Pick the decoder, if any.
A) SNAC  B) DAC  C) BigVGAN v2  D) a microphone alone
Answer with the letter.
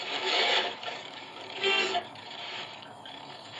B